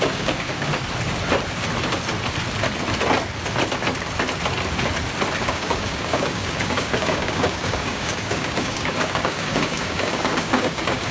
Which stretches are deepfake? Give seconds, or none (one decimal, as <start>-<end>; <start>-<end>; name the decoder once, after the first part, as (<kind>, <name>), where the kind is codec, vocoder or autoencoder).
0.0-0.7 (codec, DAC); 5.4-11.1